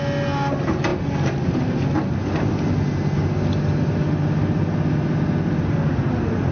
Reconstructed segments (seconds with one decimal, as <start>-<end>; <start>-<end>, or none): none